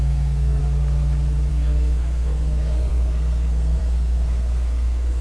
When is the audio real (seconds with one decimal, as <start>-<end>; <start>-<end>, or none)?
0.6-1.5